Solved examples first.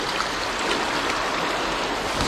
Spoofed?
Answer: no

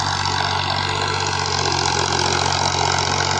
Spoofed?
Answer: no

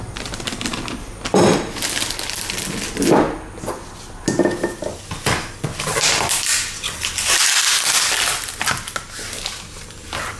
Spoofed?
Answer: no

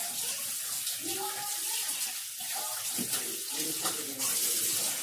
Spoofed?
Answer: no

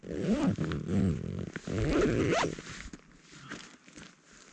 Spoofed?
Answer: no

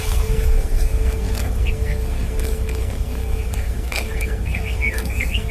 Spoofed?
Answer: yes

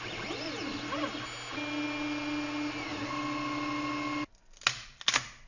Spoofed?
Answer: no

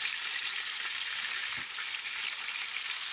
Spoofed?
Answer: no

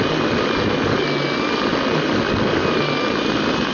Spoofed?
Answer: no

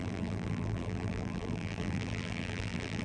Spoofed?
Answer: yes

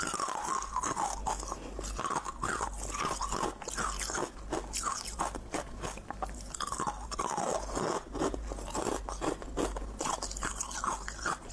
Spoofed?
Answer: no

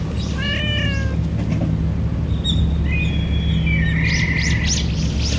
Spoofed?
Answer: no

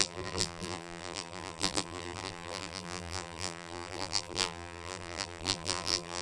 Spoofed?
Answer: yes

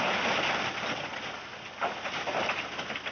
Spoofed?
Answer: no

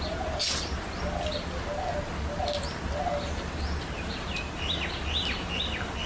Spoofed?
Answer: no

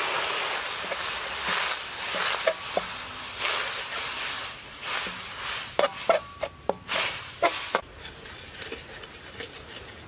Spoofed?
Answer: no